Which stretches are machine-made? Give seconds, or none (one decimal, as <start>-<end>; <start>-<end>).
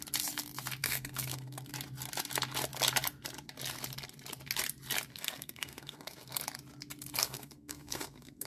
0.8-1.7; 5.1-6.4; 7.2-8.5